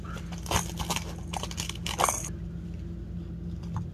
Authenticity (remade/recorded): recorded